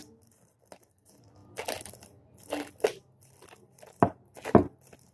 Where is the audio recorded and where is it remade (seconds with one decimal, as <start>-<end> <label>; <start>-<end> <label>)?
0.0-5.1 recorded